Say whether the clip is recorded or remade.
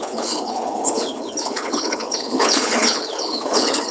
remade